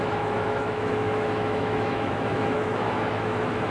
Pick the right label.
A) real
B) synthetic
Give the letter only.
B